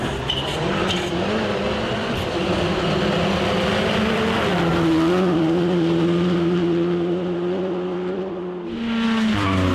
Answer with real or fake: real